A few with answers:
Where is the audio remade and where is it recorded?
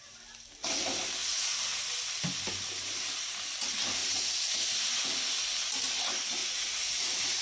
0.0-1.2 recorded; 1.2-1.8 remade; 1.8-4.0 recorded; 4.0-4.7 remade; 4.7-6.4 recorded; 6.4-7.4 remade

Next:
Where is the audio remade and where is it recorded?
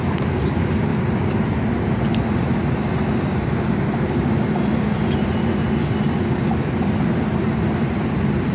0.0-8.5 recorded